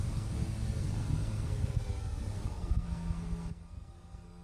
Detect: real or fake fake